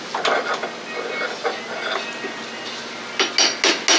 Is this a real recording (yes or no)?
yes